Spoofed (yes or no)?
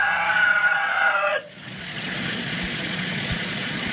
yes